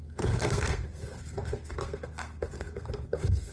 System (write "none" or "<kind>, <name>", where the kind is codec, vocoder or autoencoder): codec, SNAC